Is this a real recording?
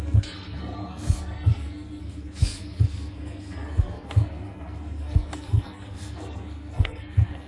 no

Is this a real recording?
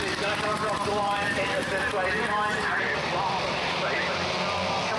yes